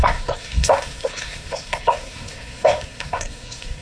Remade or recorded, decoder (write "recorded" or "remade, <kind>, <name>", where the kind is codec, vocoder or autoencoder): remade, codec, SNAC